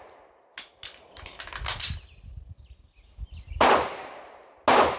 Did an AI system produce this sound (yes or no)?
no